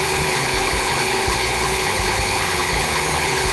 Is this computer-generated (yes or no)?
yes